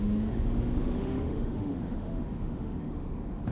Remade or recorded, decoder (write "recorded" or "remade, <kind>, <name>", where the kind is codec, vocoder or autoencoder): remade, autoencoder, DAC-VAE